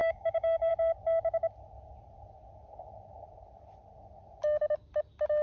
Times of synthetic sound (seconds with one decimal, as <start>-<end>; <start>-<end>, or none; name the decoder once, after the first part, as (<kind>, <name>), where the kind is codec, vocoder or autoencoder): 0.0-0.7 (codec, DAC)